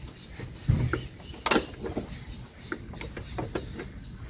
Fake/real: real